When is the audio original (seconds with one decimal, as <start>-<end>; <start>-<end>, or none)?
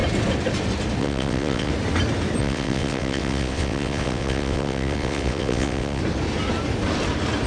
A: 0.0-1.0; 1.7-2.4; 6.0-7.5